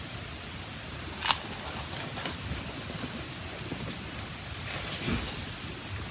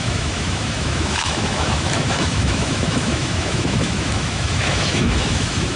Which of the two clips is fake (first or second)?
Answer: second